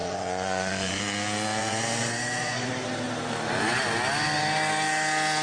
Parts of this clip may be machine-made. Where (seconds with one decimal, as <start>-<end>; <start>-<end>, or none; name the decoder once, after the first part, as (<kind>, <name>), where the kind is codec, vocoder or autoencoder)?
0.0-1.0 (vocoder, Vocos); 1.6-2.7